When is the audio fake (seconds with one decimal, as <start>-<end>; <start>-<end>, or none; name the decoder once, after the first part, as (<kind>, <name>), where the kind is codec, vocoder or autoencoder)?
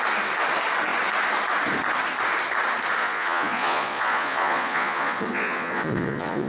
3.0-6.5 (vocoder, Vocos)